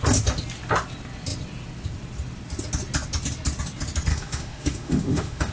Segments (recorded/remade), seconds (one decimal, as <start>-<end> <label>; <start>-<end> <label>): 0.0-4.1 recorded; 4.1-5.5 remade

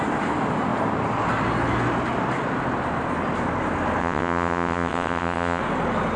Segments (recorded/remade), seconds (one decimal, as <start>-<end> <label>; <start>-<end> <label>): 0.0-4.0 recorded; 4.0-5.6 remade; 5.6-6.2 recorded

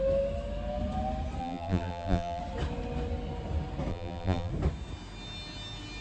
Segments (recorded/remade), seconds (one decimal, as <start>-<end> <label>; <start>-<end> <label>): 0.0-1.4 recorded; 1.4-2.4 remade; 2.4-3.9 recorded; 3.9-4.5 remade; 4.5-6.0 recorded

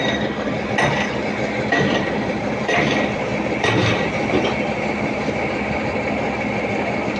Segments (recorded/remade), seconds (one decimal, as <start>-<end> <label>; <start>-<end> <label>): 0.0-3.3 remade; 3.3-5.3 recorded; 5.3-7.2 remade

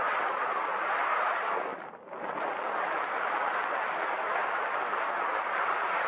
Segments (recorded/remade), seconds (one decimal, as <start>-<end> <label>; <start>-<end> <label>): 0.0-6.1 recorded